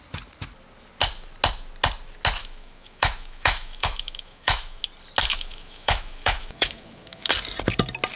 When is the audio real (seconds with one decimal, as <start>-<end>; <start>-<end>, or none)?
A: 0.0-2.4; 4.8-5.3; 7.3-8.2